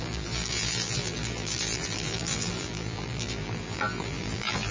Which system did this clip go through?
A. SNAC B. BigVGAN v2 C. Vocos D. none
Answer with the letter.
B